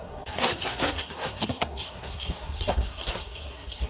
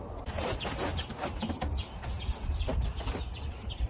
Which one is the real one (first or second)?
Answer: second